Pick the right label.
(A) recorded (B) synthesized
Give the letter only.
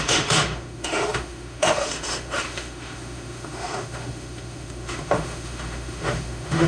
B